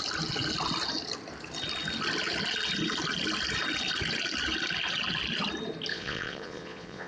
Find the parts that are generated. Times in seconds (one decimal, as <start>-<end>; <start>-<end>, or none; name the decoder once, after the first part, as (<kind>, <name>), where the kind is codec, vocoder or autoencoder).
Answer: 5.9-7.1 (vocoder, Vocos)